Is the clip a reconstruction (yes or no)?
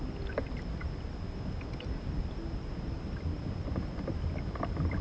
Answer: no